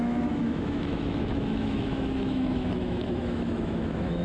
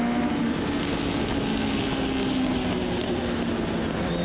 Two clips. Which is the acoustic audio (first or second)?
second